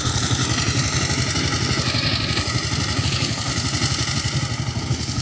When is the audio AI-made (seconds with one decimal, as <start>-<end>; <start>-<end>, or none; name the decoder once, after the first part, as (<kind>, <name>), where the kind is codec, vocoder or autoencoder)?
0.0-0.4 (codec, HILCodec); 3.0-3.5; 4.8-5.2